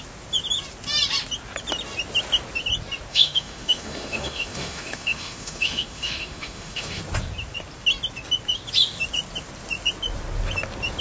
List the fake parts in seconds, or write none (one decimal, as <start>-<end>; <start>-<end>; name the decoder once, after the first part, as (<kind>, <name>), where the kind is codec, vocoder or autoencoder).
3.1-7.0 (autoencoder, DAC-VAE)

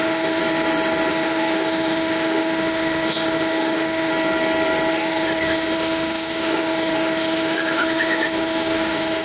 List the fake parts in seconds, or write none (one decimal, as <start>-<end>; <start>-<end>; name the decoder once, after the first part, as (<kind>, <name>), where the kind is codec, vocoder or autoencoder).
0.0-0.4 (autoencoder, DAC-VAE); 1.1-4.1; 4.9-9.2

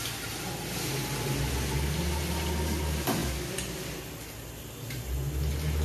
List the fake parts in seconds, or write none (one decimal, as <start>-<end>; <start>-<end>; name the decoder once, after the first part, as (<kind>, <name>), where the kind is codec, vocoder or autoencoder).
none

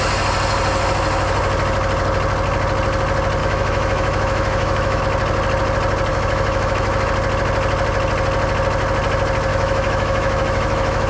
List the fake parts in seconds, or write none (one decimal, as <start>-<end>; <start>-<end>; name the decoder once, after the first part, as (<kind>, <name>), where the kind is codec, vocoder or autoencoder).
3.4-5.0 (autoencoder, DAC-VAE); 6.1-7.1; 9.5-11.1

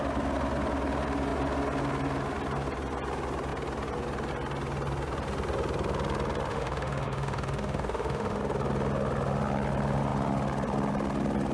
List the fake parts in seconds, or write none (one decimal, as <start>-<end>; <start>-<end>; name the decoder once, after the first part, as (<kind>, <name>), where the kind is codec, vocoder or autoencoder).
6.5-8.4 (autoencoder, DAC-VAE)

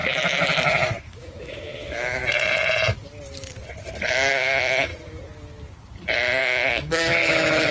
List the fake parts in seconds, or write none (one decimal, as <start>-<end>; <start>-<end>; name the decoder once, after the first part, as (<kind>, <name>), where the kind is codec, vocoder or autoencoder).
1.1-2.2 (autoencoder, DAC-VAE); 4.3-4.9; 6.4-7.7

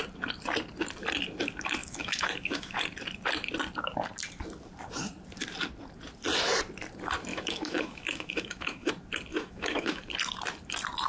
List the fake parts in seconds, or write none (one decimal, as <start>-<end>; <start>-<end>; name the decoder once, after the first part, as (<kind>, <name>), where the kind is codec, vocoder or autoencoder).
1.8-2.8 (autoencoder, DAC-VAE); 7.3-8.9; 9.3-10.0